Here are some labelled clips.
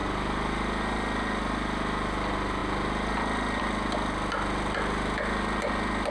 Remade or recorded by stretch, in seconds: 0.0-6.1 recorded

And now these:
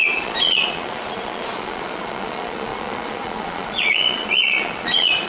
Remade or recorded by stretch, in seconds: 0.0-5.3 remade

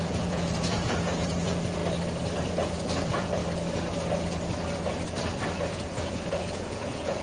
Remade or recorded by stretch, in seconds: 0.0-1.8 remade; 1.8-2.5 recorded; 2.5-3.4 remade; 3.4-5.7 recorded; 5.7-7.2 remade

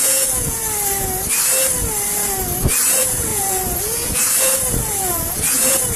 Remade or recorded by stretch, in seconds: 0.0-0.6 remade; 0.6-2.9 recorded; 2.9-6.0 remade

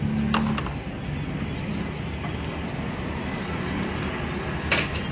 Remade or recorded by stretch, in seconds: 0.0-5.1 recorded

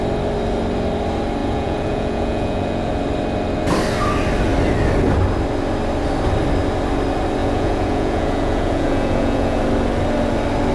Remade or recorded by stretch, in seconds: 0.0-1.4 recorded; 1.4-2.9 remade; 2.9-7.4 recorded; 7.4-9.6 remade; 9.6-10.7 recorded

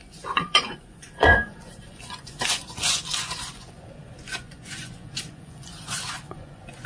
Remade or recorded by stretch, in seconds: 0.0-6.9 remade

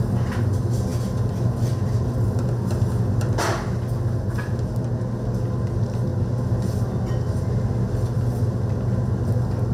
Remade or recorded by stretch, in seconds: 0.0-9.7 recorded